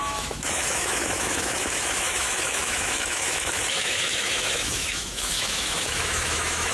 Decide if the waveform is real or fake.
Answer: fake